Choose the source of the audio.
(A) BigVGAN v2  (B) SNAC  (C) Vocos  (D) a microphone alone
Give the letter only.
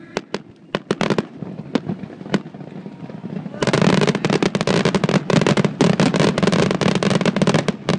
D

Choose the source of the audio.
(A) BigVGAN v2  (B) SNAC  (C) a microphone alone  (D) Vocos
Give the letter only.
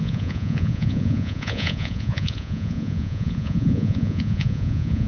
D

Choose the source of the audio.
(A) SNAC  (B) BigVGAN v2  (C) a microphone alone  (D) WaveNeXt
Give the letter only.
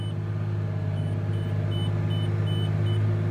C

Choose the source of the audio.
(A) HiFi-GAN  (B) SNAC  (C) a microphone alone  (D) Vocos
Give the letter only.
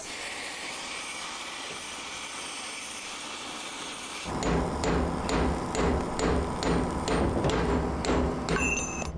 C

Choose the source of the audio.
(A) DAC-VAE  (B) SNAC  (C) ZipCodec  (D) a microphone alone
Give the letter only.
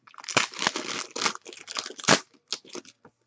D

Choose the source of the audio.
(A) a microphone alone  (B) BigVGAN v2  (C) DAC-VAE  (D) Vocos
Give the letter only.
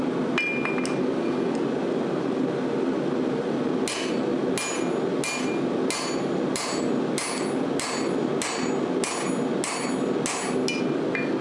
A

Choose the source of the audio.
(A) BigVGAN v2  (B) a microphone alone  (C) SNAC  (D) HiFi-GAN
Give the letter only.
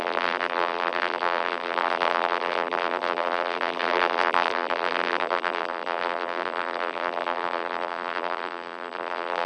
A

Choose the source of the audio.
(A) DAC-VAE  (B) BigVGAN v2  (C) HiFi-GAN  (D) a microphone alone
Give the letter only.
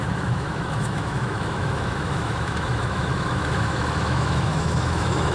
A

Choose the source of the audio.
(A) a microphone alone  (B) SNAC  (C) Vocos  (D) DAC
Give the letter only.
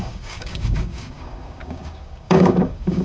D